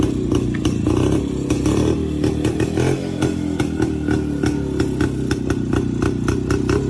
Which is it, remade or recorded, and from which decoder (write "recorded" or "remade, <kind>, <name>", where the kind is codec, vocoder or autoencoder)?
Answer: recorded